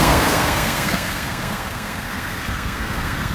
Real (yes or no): no